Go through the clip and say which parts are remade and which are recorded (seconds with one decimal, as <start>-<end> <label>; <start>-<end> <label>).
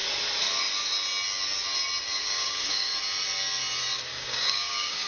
0.0-2.2 recorded; 2.2-2.9 remade; 2.9-4.1 recorded; 4.1-5.1 remade